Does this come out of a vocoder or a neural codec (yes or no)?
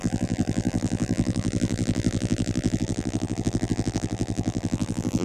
yes